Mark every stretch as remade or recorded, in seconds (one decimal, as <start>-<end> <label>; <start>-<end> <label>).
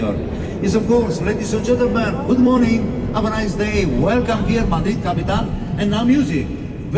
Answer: 0.0-0.5 recorded; 0.5-1.2 remade; 1.2-1.9 recorded; 1.9-3.1 remade; 3.1-3.7 recorded; 3.7-5.5 remade; 5.5-7.0 recorded